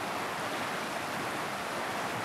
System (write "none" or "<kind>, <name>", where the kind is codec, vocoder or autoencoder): none